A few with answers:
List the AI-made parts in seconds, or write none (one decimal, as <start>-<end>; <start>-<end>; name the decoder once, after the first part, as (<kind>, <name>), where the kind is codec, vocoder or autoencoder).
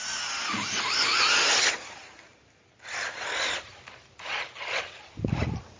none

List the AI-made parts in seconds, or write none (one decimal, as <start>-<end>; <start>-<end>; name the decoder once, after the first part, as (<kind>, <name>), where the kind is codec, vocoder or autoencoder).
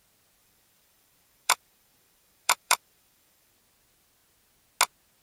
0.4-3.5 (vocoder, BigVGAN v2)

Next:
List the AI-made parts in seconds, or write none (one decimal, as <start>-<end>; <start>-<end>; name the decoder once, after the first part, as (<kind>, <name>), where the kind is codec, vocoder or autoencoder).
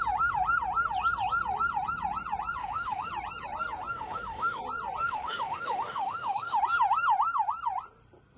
2.6-3.1 (autoencoder, DAC-VAE); 3.9-4.6; 5.0-6.6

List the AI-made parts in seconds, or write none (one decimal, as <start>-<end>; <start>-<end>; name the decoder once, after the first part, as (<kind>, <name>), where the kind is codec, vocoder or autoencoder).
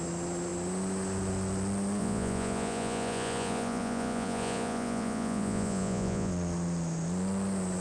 2.0-6.3 (vocoder, Vocos)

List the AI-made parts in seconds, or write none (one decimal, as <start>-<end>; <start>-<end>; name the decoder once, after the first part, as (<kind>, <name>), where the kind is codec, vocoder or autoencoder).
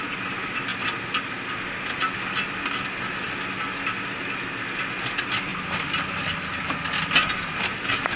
none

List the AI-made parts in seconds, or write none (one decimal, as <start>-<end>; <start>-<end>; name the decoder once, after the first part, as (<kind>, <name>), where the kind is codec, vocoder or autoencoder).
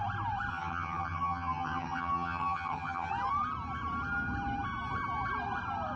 0.5-3.1 (vocoder, HiFi-GAN)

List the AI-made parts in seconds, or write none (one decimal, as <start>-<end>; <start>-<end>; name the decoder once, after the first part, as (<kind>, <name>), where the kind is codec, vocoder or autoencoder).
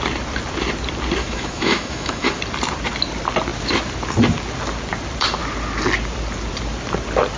1.2-2.4 (autoencoder, DAC-VAE)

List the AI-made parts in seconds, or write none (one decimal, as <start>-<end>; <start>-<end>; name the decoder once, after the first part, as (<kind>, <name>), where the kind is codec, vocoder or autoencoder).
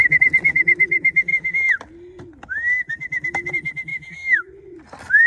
3.9-4.5 (autoencoder, DAC-VAE)